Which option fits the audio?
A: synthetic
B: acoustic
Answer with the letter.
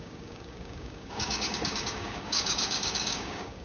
A